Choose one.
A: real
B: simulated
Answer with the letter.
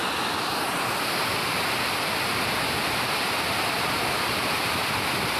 A